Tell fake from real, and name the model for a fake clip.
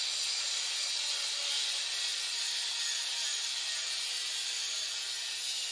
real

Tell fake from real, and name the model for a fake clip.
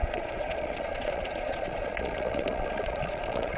fake, vocoder, Vocos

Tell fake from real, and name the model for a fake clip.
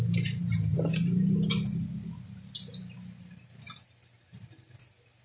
real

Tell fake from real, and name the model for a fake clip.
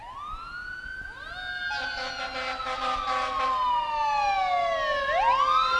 real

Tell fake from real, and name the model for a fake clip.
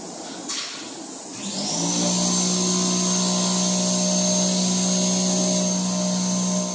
real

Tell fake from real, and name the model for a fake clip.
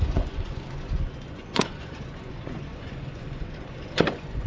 fake, vocoder, Vocos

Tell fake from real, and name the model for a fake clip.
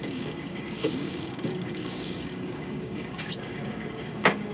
fake, codec, DAC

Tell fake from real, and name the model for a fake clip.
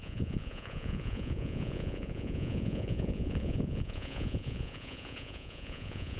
fake, vocoder, Vocos